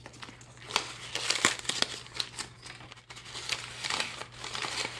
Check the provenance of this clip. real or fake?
real